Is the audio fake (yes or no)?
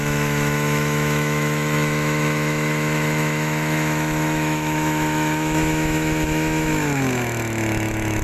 yes